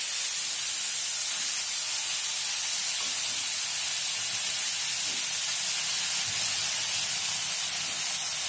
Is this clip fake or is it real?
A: real